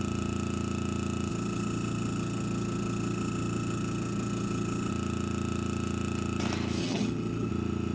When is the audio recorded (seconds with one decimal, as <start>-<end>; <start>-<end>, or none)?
0.0-1.3; 4.9-6.8; 7.5-7.9

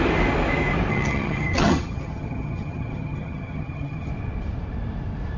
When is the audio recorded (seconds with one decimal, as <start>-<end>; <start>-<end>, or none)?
0.0-0.9; 4.1-5.4

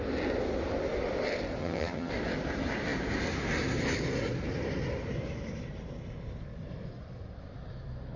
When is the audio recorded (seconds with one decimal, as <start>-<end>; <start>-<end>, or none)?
0.0-1.6; 2.1-8.2

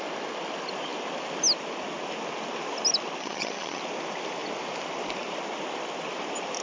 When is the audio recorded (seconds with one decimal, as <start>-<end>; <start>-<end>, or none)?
0.0-3.2; 3.8-6.6

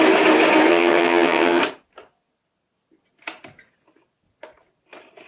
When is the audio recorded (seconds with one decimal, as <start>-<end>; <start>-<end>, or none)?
0.0-0.7; 1.6-5.3

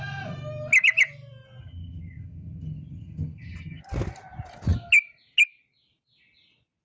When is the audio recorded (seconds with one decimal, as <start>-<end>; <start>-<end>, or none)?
0.0-1.6; 3.8-6.8